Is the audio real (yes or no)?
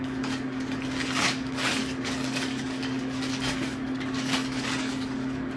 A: no